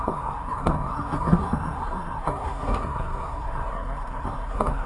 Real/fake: fake